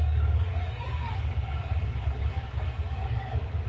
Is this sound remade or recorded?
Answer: remade